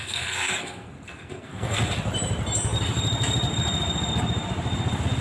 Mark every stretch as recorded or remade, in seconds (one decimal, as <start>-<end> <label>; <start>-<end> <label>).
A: 0.0-1.8 remade; 1.8-5.2 recorded

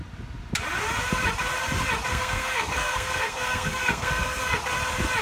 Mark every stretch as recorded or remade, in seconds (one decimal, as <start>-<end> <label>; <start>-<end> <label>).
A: 0.0-2.1 recorded; 2.1-4.6 remade; 4.6-5.2 recorded

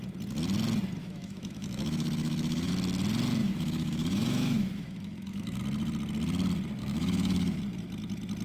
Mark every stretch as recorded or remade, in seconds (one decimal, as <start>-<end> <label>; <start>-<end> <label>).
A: 0.0-1.0 recorded; 1.0-2.7 remade; 2.7-3.4 recorded; 3.4-5.6 remade; 5.6-6.8 recorded; 6.8-7.6 remade; 7.6-8.4 recorded

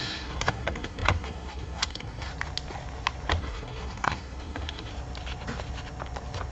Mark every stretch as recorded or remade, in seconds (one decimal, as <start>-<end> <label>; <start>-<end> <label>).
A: 0.0-2.3 remade; 2.3-3.4 recorded; 3.4-4.9 remade; 4.9-6.5 recorded

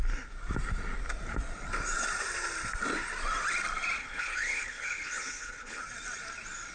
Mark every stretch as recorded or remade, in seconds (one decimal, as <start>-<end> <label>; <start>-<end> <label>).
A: 0.0-4.0 recorded; 4.0-5.8 remade; 5.8-6.7 recorded

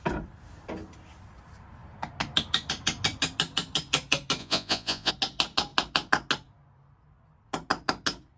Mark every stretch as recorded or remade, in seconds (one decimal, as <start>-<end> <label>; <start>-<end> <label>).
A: 0.0-4.4 recorded; 4.4-5.1 remade; 5.1-8.4 recorded

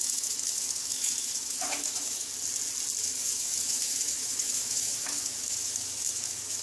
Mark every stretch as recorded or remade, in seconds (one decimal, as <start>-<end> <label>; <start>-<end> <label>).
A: 0.0-2.3 remade; 2.3-3.0 recorded; 3.0-6.6 remade